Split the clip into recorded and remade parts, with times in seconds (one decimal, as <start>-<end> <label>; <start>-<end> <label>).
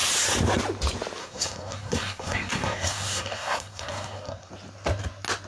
0.0-1.2 recorded; 1.2-4.5 remade; 4.5-5.5 recorded